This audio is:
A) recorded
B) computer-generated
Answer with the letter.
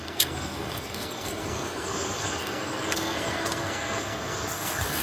B